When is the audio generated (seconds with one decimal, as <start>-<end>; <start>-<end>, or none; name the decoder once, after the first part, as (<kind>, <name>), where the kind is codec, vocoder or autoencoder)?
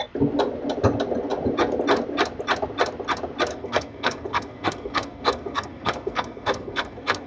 3.5-7.3 (codec, SNAC)